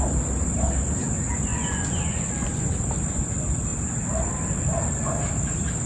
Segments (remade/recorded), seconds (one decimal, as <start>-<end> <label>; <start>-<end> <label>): 0.0-1.5 recorded; 1.5-2.7 remade; 2.7-5.9 recorded